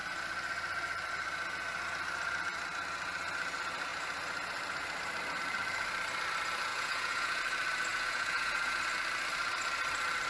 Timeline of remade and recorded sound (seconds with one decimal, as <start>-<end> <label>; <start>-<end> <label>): 0.0-6.7 recorded; 6.7-7.4 remade; 7.4-7.9 recorded; 7.9-8.8 remade; 8.8-10.3 recorded

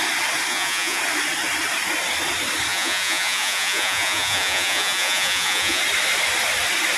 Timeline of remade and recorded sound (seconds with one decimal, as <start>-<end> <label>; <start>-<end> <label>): 0.0-0.5 recorded; 0.5-1.0 remade; 1.0-2.7 recorded; 2.7-5.8 remade; 5.8-7.0 recorded

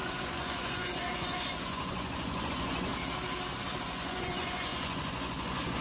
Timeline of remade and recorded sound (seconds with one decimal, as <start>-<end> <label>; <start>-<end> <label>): 0.0-2.9 remade; 2.9-3.8 recorded; 3.8-5.8 remade

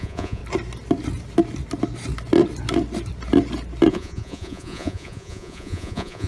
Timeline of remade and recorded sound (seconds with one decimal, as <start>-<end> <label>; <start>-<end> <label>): 0.0-0.4 remade; 0.4-3.9 recorded; 3.9-6.3 remade